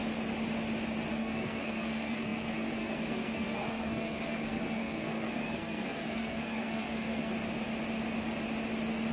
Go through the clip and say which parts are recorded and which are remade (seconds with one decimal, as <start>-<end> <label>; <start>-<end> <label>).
0.0-1.1 recorded; 1.1-7.3 remade; 7.3-9.1 recorded